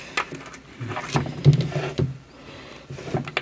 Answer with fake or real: real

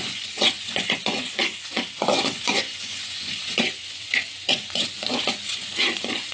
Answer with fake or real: fake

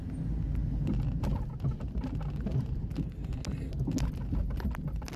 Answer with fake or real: real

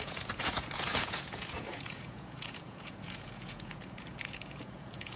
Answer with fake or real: fake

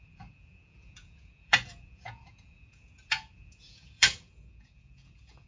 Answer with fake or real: fake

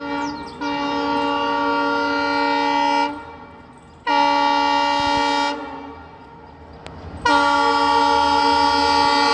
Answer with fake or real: real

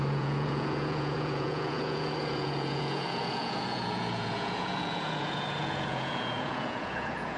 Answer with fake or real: fake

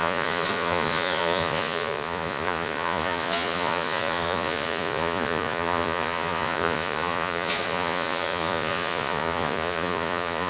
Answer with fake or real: fake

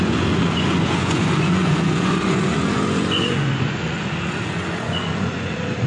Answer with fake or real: fake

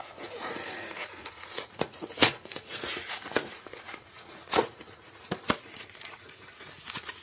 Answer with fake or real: fake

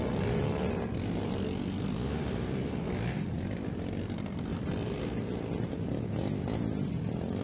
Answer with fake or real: real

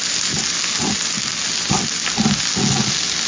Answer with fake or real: real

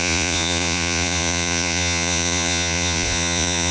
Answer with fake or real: fake